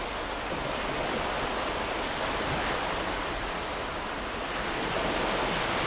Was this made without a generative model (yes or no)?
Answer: yes